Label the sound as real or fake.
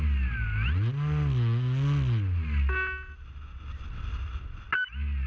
real